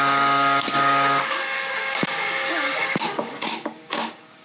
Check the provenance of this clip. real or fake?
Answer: fake